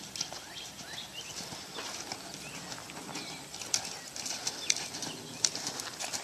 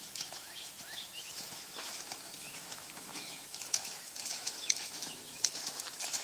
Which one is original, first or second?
first